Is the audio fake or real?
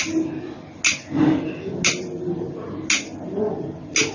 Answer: real